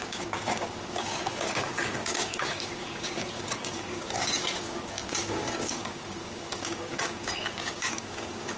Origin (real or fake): fake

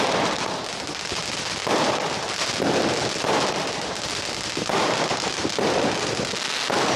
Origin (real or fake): real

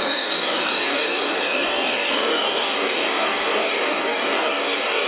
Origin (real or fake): fake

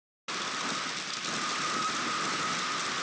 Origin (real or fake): real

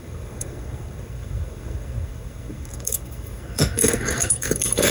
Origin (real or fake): fake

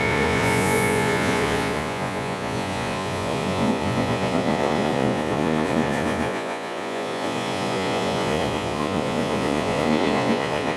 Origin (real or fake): fake